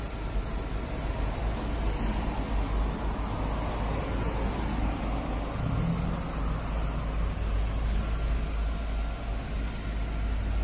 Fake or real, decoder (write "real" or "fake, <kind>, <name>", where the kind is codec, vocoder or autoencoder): real